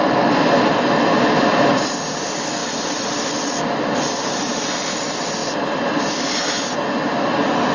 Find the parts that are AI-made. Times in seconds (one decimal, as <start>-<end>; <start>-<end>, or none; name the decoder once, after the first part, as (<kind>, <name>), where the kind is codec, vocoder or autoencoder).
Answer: none